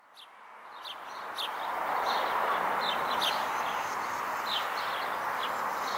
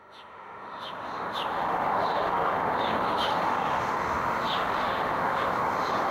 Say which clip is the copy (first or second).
second